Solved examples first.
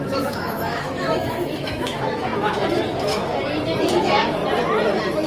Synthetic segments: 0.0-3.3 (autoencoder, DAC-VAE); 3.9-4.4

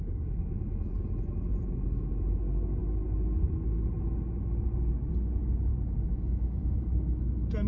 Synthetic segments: none

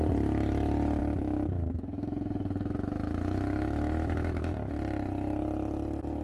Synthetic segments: 1.0-4.7 (autoencoder, DAC-VAE)

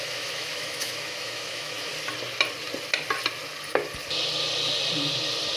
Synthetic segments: 0.0-1.9 (autoencoder, DAC-VAE)

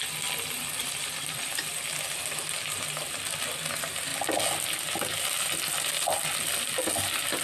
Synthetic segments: none